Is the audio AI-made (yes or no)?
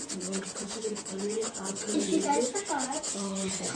yes